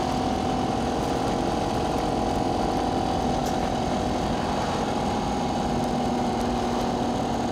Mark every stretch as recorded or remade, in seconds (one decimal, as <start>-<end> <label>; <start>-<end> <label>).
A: 0.0-7.5 recorded